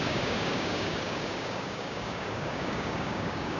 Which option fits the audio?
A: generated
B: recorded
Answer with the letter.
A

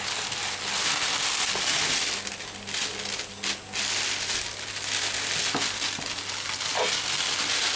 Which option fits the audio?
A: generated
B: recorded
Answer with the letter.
B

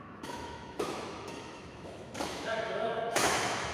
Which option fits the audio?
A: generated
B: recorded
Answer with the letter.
A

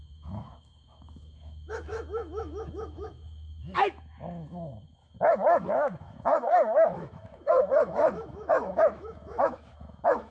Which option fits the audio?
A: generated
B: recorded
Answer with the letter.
A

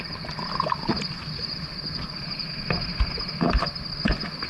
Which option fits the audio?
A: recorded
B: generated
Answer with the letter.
A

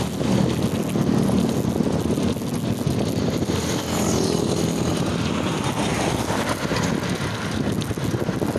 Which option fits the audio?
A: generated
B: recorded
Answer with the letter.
B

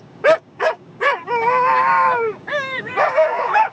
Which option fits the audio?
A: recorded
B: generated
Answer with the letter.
B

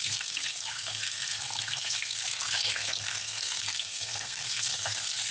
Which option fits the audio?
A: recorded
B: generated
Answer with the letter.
B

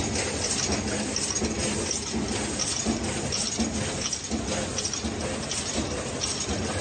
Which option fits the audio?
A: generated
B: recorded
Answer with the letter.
B